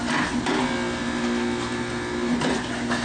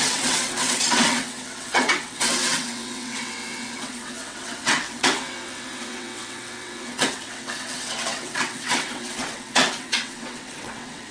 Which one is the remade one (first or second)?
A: second